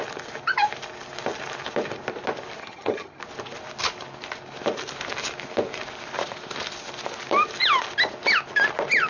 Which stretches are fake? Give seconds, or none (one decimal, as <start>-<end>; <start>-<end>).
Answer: 2.6-3.2